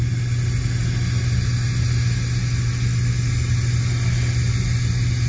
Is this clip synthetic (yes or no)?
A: no